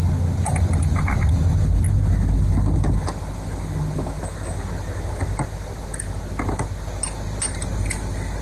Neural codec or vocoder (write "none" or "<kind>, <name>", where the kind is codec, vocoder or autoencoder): none